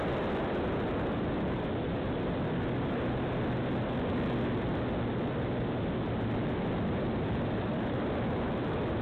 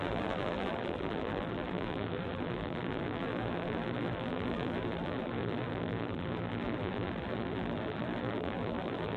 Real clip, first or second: first